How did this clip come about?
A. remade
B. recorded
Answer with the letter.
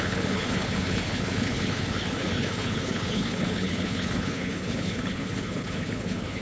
A